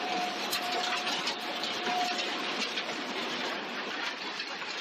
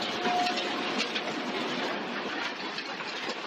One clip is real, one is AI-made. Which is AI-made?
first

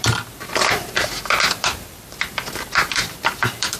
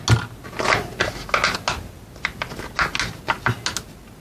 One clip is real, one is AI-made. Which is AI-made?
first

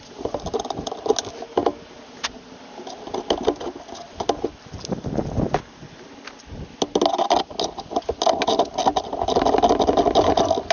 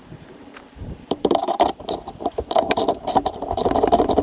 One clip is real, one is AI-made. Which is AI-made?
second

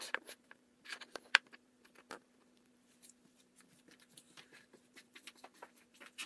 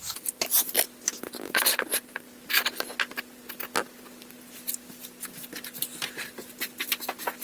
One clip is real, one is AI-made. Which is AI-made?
first